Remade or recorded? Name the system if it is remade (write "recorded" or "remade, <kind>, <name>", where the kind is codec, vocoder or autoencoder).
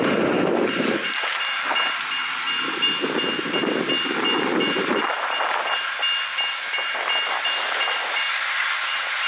recorded